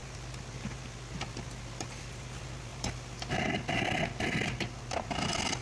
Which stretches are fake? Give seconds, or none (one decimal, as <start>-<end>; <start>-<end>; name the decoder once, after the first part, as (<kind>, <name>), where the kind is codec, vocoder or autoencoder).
0.0-2.2 (vocoder, BigVGAN v2); 2.7-3.4; 4.4-4.9